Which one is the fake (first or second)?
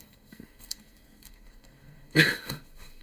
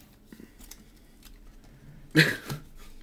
first